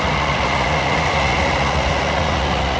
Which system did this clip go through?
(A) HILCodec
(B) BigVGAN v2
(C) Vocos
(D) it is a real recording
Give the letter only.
C